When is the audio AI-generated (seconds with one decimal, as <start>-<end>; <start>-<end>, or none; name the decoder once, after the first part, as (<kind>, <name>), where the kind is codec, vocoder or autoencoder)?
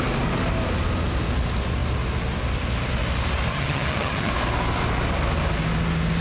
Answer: 3.5-4.3 (vocoder, HiFi-GAN)